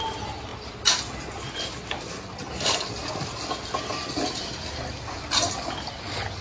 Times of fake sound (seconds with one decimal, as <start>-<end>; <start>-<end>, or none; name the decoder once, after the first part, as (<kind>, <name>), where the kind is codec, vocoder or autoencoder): none